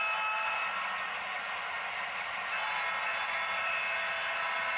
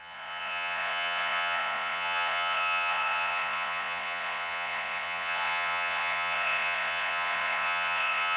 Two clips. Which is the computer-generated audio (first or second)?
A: second